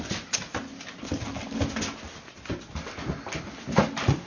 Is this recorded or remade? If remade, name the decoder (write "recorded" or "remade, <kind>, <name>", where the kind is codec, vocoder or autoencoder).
recorded